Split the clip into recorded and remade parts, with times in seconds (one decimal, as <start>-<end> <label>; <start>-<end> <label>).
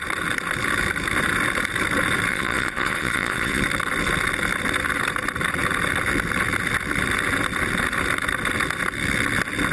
0.0-2.3 recorded; 2.3-3.6 remade; 3.6-9.7 recorded